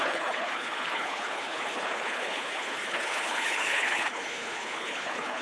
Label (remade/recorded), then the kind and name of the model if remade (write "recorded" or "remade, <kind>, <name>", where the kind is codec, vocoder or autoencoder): remade, codec, HILCodec